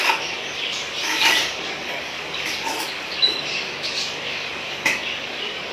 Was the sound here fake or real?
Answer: fake